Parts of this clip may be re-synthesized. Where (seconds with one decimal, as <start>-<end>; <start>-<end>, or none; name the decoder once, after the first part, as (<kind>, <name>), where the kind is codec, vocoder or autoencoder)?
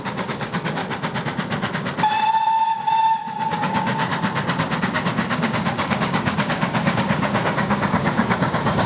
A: 0.0-0.8 (codec, DAC); 2.6-4.1; 4.8-8.9